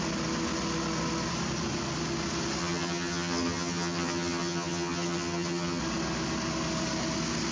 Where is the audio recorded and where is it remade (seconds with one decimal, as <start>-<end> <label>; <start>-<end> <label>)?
0.0-2.6 recorded; 2.6-5.8 remade; 5.8-7.5 recorded